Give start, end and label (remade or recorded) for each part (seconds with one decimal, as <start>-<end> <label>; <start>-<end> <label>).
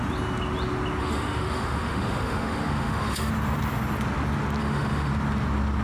0.0-1.0 recorded; 1.0-3.3 remade; 3.3-4.6 recorded; 4.6-5.1 remade; 5.1-5.8 recorded